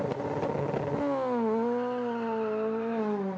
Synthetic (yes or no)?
no